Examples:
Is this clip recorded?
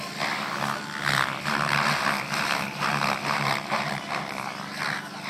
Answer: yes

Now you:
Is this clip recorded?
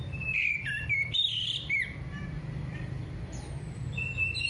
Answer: no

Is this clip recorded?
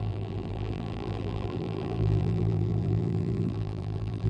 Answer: no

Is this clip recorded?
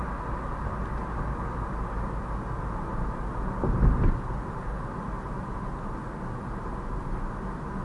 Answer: yes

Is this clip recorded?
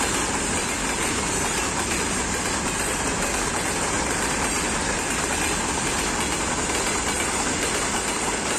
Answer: yes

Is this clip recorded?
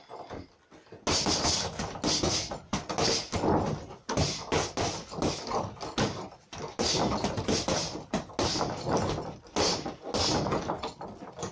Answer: yes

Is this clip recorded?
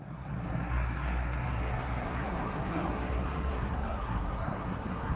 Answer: no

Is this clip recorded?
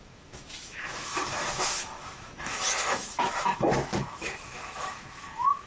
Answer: no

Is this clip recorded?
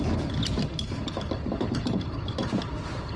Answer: yes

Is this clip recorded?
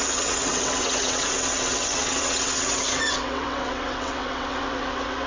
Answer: no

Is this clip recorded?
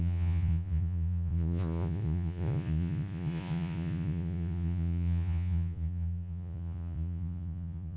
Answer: no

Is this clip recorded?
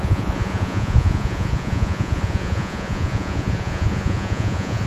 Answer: no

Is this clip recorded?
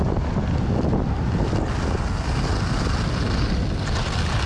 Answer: yes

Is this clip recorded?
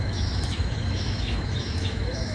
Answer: no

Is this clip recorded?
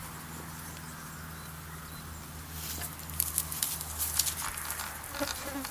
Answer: yes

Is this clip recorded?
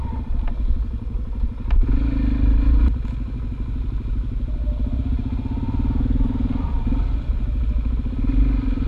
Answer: yes